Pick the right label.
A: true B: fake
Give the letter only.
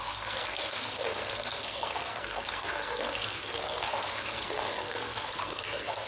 B